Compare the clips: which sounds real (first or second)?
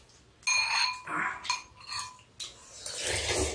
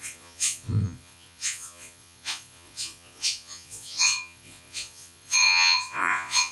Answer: first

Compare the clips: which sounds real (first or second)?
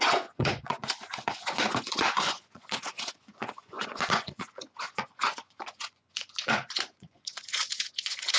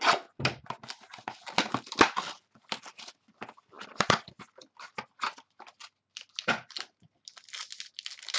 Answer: second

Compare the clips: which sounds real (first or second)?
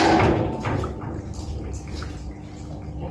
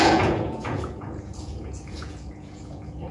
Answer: first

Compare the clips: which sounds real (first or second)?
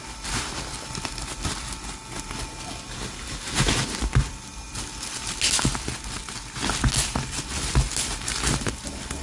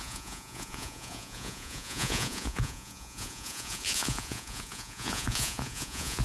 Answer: first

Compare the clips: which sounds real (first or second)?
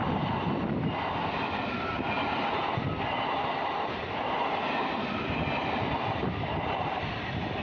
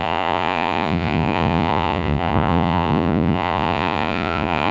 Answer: first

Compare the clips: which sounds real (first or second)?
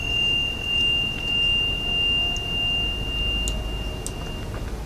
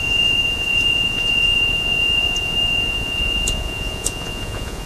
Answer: first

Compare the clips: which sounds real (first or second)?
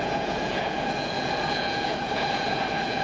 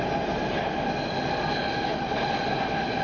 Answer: second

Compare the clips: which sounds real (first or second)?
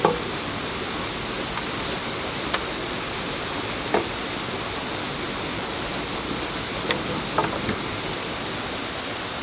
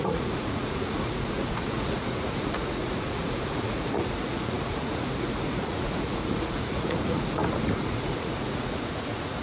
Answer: first